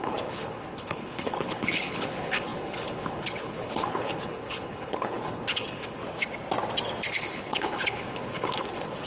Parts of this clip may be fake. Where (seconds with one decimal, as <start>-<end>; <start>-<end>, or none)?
0.0-6.0; 7.2-9.1